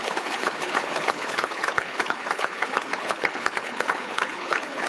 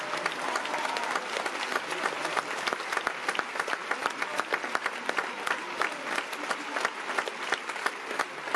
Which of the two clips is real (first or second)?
second